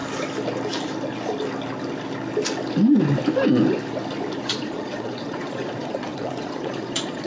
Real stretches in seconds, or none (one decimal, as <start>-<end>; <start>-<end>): 0.0-4.4